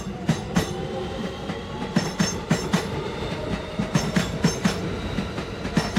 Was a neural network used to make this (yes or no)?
yes